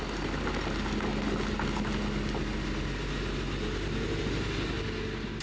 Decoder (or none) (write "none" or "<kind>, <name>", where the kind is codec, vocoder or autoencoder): none